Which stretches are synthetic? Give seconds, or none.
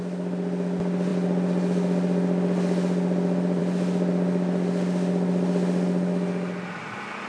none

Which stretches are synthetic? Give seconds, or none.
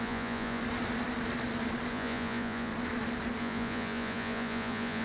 0.0-0.6; 1.9-2.7; 3.4-5.0